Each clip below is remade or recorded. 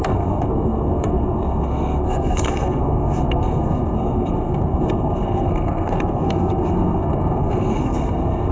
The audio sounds remade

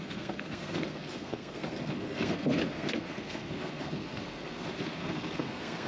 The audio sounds remade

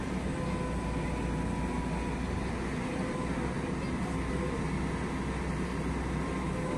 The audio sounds recorded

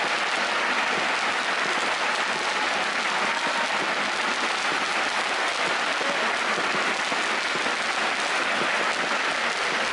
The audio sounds recorded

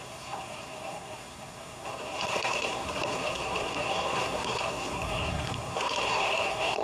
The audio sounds remade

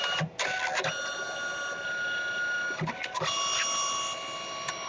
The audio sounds recorded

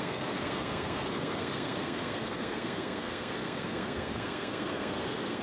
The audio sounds remade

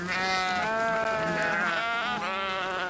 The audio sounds recorded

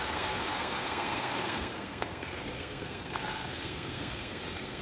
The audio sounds remade